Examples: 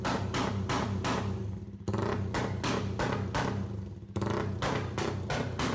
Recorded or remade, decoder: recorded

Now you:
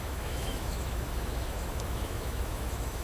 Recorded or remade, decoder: remade, autoencoder, DAC-VAE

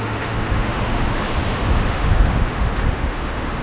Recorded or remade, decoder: remade, autoencoder, DAC-VAE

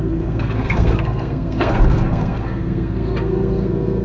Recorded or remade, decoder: remade, codec, SNAC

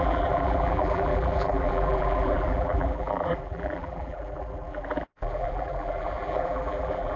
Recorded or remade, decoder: remade, vocoder, BigVGAN v2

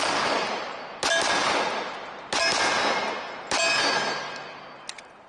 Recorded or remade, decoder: recorded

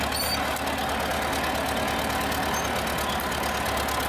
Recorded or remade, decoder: recorded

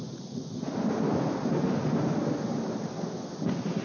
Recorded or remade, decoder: recorded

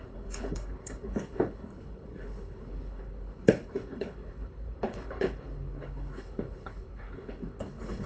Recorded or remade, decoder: remade, codec, HILCodec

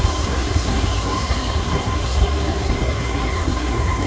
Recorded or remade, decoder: remade, codec, SNAC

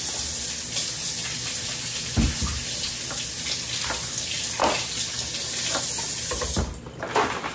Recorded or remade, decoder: recorded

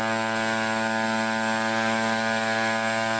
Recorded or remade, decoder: recorded